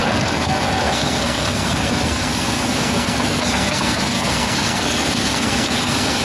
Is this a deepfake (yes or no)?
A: yes